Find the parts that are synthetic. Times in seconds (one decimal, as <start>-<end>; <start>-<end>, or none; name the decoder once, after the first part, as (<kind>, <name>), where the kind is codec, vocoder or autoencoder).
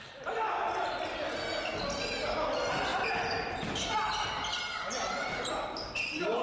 none